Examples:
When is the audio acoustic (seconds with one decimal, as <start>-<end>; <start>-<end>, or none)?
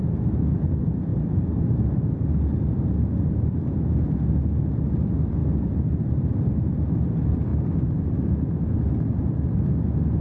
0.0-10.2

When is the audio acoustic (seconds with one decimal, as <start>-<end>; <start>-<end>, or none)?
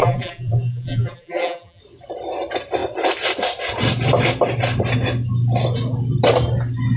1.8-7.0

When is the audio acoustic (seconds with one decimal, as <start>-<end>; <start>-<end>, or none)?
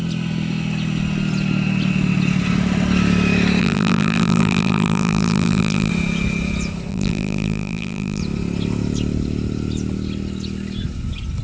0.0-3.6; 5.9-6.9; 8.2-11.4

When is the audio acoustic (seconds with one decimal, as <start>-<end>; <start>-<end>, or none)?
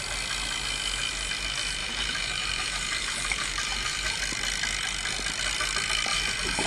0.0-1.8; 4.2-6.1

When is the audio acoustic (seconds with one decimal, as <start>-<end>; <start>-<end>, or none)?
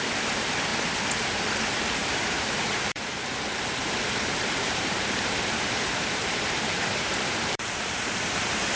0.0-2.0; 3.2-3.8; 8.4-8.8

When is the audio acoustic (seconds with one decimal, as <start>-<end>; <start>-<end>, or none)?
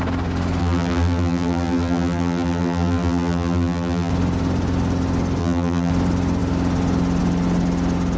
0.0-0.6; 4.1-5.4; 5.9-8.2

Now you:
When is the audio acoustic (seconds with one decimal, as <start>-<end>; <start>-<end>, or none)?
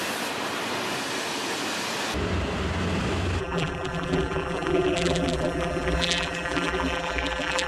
0.0-3.4